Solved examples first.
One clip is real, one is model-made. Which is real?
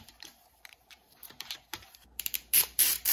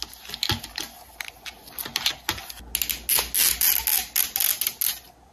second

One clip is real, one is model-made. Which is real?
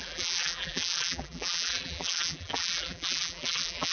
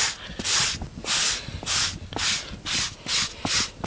second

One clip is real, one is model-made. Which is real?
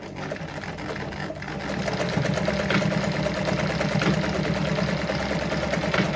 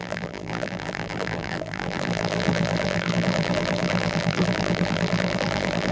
first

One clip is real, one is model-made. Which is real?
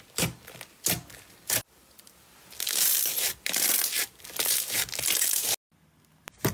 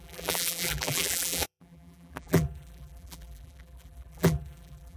first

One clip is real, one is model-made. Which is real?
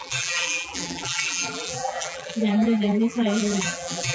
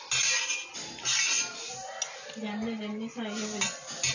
second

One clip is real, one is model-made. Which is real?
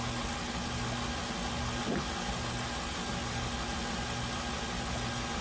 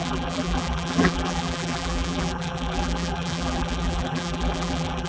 first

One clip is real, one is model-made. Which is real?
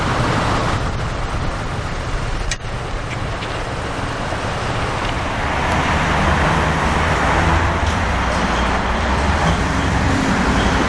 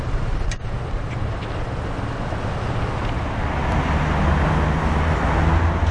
second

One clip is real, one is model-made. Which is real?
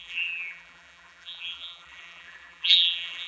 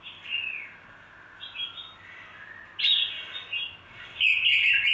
second